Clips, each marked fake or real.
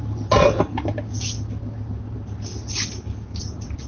real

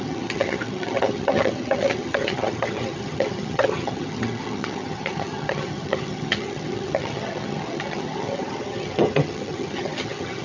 fake